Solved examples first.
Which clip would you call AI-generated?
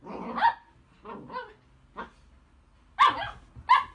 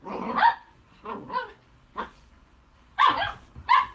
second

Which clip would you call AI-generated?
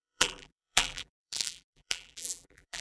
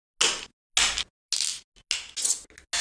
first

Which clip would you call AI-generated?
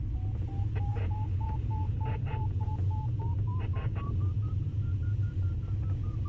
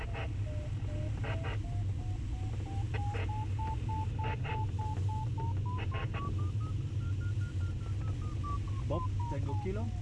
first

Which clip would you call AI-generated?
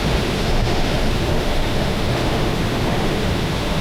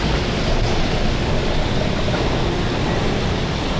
first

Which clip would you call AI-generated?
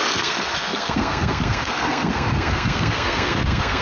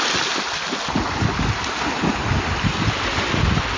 first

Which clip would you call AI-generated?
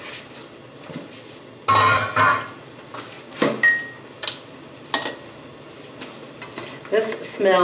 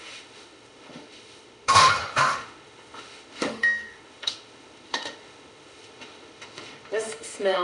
second